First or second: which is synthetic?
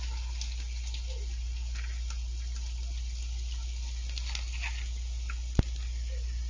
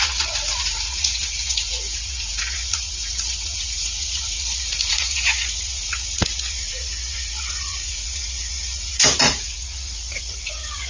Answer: second